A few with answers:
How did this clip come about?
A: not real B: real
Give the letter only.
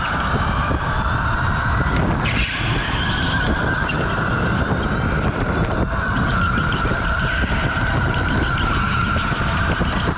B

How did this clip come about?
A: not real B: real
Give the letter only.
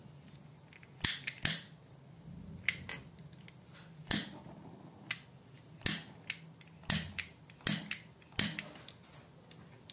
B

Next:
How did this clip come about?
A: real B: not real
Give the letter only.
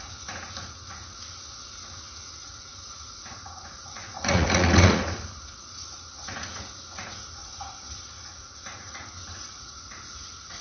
B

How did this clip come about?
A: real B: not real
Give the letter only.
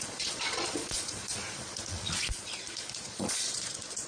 B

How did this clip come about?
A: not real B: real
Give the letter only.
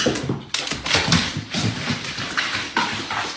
B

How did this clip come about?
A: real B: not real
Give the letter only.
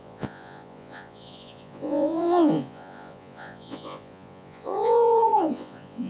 B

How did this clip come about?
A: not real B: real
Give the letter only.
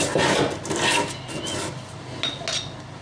B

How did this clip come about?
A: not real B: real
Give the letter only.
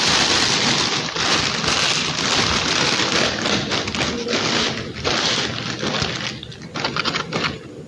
B